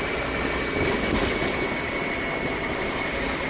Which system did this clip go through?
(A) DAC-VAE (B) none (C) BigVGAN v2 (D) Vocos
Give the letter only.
B